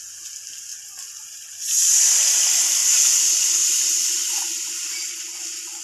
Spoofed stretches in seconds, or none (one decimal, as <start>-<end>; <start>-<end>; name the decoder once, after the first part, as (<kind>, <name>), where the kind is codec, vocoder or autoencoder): none